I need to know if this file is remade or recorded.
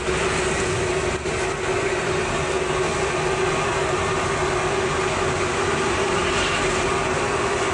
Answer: recorded